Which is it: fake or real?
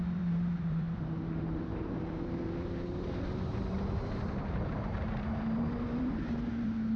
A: fake